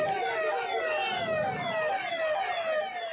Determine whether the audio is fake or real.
real